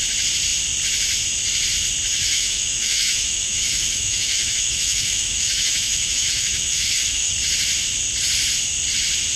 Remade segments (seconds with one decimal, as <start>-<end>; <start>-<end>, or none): 2.1-7.3

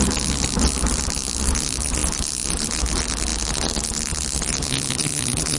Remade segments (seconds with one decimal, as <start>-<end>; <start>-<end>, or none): none

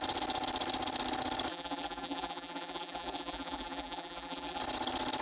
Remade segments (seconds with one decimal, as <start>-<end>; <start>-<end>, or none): 1.5-4.6

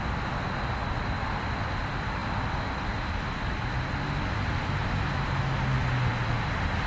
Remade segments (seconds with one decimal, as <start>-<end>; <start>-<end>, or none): none

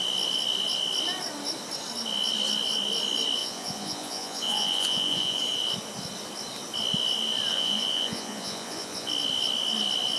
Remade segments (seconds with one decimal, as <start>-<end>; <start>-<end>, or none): 3.4-5.4; 7.5-9.1